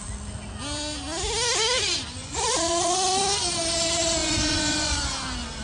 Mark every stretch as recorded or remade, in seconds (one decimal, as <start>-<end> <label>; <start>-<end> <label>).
0.0-2.2 recorded; 2.2-3.2 remade; 3.2-4.2 recorded; 4.2-5.1 remade; 5.1-5.6 recorded